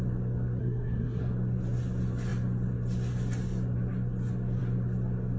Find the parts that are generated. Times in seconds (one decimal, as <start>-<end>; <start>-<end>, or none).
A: 0.6-1.2